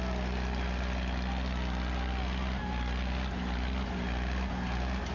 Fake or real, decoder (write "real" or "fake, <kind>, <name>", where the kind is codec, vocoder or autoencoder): real